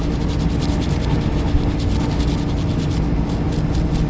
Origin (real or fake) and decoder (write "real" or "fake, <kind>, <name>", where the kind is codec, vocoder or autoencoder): real